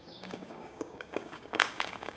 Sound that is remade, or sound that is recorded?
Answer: remade